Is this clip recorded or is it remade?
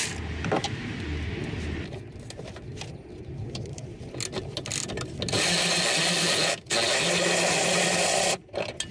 recorded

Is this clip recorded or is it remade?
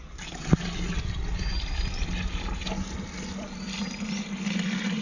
recorded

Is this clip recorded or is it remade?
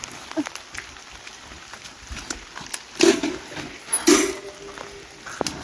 recorded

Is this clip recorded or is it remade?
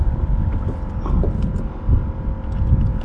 recorded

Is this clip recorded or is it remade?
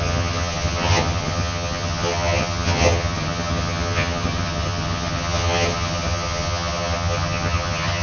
remade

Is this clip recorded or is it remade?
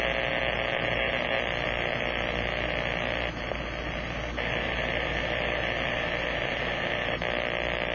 recorded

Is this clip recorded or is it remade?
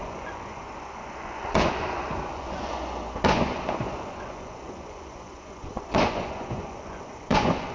remade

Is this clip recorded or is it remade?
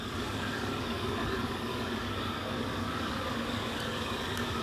remade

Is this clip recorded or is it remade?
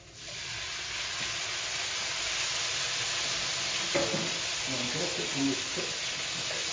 recorded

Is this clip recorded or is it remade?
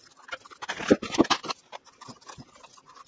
recorded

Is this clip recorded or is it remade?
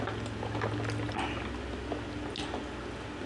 recorded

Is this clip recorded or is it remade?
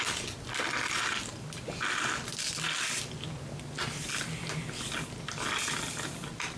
recorded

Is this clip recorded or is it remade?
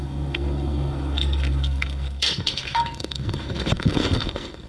remade